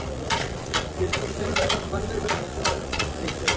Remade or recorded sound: remade